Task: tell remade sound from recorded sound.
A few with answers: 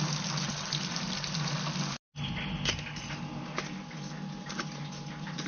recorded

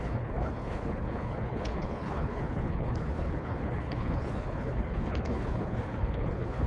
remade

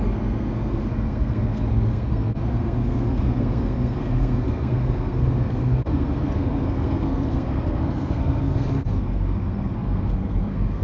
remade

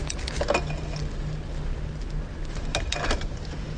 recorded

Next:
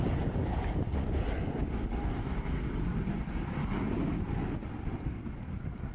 recorded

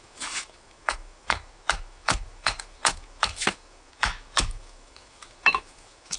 remade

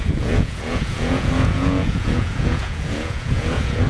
remade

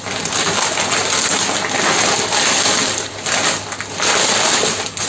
recorded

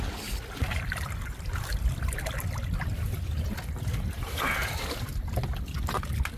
recorded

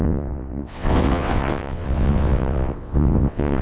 remade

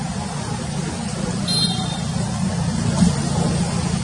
recorded